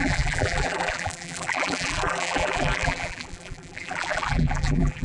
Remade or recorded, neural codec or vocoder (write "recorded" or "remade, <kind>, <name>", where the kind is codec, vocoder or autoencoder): remade, vocoder, BigVGAN v2